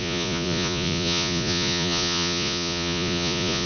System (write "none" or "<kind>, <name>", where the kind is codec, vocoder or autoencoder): vocoder, Vocos